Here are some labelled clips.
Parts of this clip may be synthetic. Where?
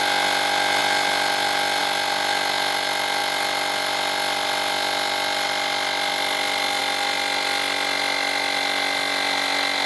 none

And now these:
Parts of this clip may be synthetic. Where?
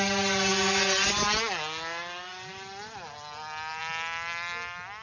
none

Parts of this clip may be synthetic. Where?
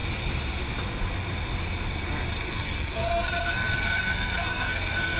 2.4-5.2 (codec, SNAC)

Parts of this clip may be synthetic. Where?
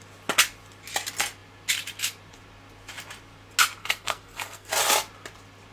3.8-4.7 (codec, SNAC)